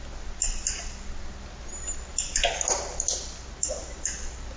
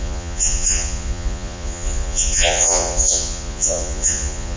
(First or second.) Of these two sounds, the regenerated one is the second